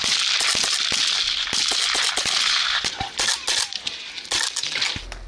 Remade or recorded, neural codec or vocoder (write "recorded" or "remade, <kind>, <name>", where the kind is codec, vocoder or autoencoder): recorded